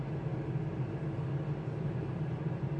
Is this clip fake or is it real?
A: fake